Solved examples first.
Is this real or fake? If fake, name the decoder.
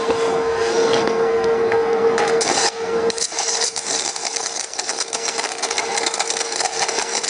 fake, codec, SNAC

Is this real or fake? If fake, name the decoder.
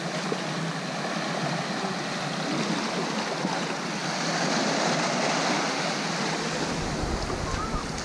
real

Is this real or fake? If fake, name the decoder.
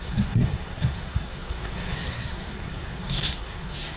fake, codec, SNAC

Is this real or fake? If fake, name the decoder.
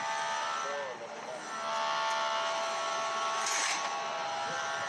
real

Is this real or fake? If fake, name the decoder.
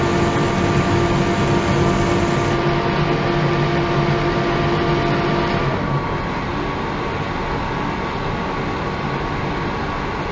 real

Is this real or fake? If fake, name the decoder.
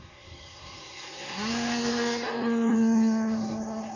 fake, codec, SNAC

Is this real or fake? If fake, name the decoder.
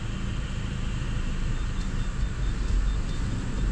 real